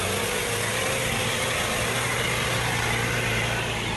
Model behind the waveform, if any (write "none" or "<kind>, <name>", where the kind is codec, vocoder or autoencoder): none